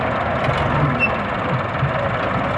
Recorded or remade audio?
recorded